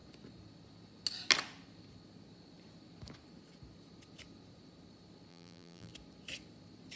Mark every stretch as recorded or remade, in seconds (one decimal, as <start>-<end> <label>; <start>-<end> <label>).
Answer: 0.0-5.3 recorded; 5.3-5.9 remade; 5.9-7.0 recorded